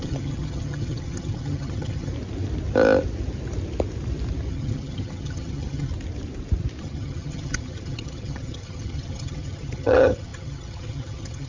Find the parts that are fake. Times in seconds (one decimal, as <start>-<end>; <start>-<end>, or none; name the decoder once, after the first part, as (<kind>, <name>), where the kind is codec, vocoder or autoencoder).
0.0-2.1 (vocoder, HiFi-GAN); 4.5-5.9; 6.8-11.5